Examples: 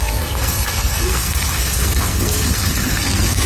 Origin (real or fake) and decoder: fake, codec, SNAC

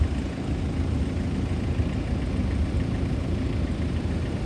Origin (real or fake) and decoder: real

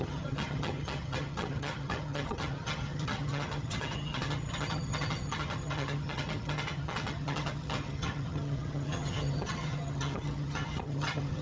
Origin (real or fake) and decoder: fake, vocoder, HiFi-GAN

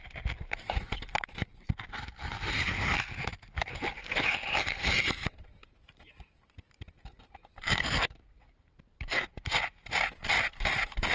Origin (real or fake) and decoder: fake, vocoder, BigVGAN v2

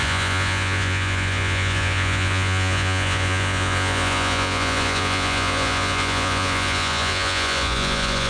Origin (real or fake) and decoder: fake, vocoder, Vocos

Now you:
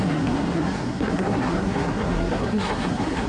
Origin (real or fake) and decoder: fake, codec, SNAC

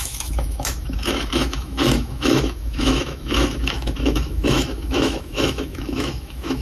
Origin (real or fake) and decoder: fake, autoencoder, DAC-VAE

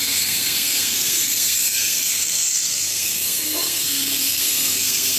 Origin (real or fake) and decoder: fake, codec, SNAC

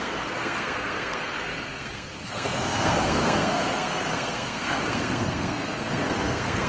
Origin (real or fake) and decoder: fake, codec, SNAC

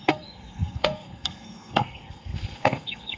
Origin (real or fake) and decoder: fake, codec, SNAC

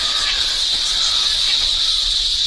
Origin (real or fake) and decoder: fake, vocoder, Vocos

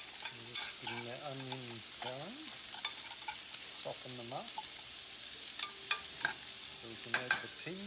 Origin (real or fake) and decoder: real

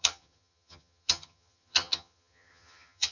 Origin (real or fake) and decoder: fake, vocoder, HiFi-GAN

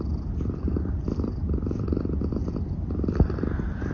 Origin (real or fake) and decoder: real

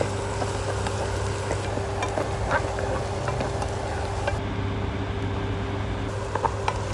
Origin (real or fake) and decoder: real